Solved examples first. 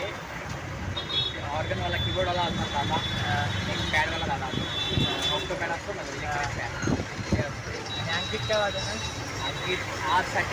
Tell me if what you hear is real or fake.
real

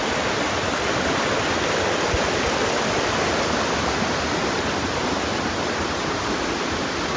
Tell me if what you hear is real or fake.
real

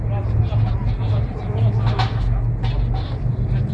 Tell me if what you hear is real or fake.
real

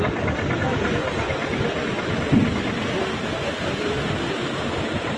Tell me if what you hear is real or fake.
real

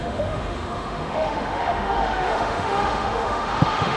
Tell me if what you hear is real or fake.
fake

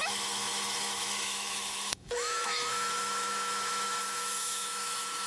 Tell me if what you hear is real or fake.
fake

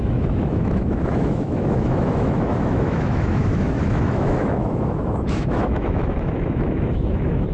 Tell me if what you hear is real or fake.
fake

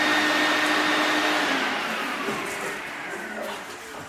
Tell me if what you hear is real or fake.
real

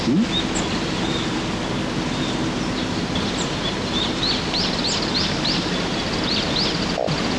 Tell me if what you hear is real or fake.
real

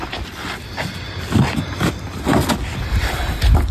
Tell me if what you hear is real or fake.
real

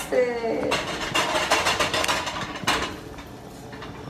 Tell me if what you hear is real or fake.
real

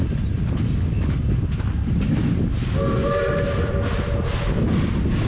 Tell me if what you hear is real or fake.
real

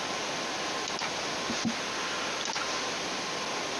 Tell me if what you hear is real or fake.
real